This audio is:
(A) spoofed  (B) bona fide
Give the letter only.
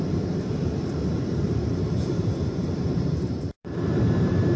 A